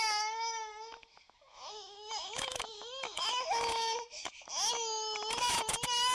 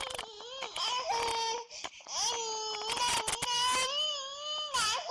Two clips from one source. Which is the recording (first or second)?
second